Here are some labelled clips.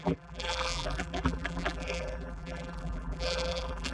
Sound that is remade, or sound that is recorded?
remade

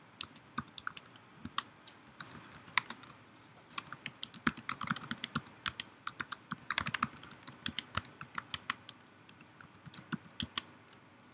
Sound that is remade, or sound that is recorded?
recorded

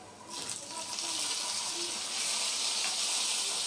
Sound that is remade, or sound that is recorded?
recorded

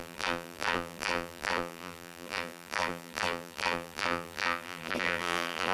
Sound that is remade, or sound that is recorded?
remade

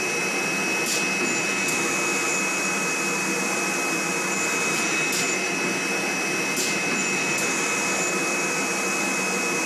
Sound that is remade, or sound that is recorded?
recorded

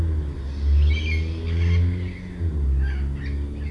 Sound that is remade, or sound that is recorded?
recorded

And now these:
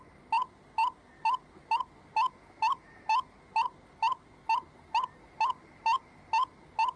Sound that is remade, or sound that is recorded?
recorded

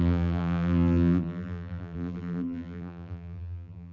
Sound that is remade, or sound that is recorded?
remade